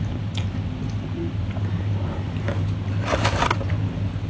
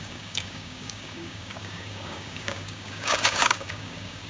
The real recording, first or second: first